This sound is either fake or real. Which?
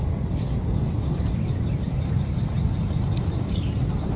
real